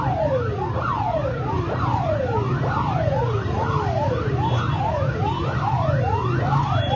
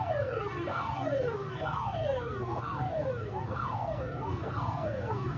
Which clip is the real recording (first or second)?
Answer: first